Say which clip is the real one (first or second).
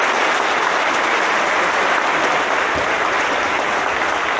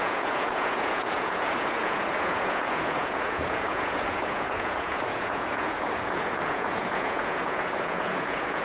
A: first